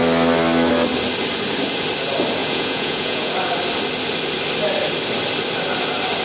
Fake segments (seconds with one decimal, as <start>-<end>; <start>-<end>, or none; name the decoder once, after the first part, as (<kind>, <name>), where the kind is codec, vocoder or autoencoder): 2.4-3.3 (vocoder, Vocos)